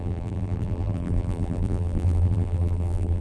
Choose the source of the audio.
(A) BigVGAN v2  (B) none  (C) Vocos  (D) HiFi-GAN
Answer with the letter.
A